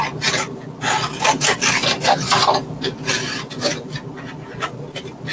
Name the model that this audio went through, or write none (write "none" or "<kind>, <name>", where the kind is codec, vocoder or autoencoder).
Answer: none